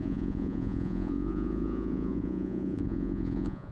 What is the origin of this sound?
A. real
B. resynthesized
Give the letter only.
B